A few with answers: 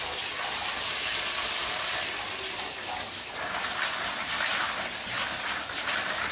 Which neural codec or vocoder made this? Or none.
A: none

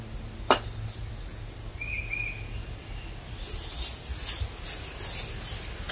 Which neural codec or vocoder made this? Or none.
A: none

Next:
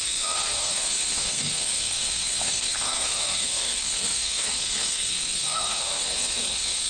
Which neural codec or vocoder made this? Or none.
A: codec, SNAC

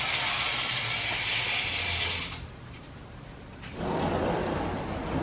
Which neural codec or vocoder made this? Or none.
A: none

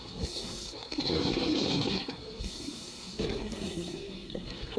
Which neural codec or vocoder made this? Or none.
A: codec, SNAC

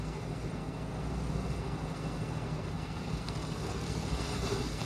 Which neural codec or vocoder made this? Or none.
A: codec, SNAC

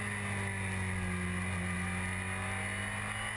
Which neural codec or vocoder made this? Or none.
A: none